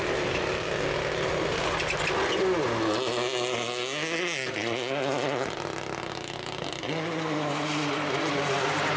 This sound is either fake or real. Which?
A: real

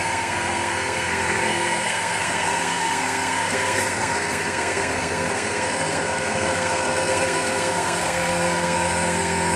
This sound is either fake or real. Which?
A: fake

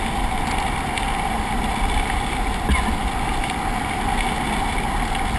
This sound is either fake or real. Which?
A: real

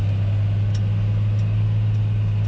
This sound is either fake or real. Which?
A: real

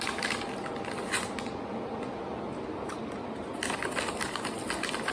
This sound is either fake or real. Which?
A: real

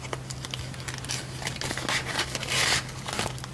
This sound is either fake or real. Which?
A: real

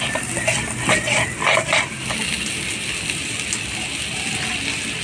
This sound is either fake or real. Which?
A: real